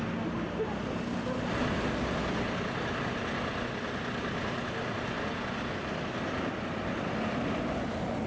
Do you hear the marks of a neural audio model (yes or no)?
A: no